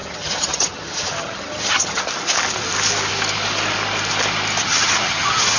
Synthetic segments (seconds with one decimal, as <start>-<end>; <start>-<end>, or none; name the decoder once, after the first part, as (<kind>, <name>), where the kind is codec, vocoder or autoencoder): 0.0-2.0 (vocoder, HiFi-GAN); 4.6-5.6